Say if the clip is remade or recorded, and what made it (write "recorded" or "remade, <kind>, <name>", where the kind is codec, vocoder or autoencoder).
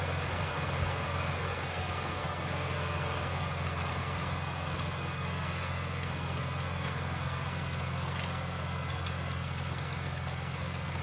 remade, codec, SNAC